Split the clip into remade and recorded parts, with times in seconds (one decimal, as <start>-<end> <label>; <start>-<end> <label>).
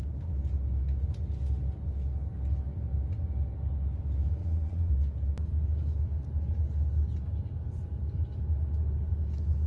0.0-4.4 recorded; 4.4-4.9 remade; 4.9-9.7 recorded